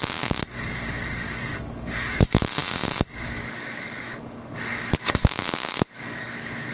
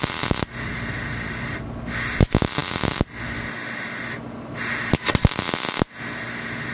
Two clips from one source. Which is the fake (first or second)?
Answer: first